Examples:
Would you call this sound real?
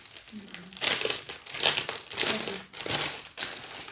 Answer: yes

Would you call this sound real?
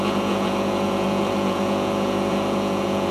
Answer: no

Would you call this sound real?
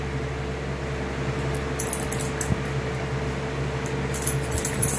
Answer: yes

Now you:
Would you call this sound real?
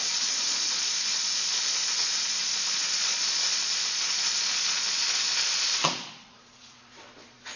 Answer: no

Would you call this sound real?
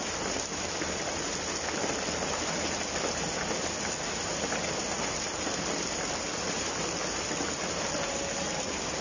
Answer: yes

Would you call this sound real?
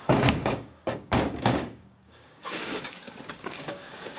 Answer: no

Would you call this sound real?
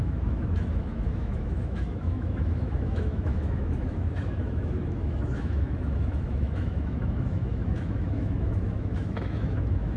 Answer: no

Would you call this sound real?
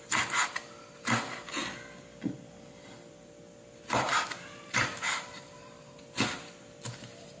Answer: yes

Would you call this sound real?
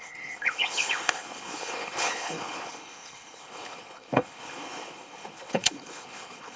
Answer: no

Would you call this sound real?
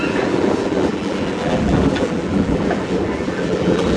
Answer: no